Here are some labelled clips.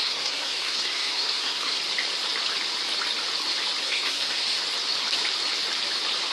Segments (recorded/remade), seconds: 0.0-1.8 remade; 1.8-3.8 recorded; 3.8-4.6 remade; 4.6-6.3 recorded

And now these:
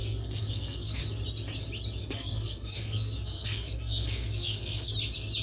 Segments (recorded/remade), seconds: 0.0-1.0 remade; 1.0-2.0 recorded; 2.0-4.9 remade; 4.9-5.4 recorded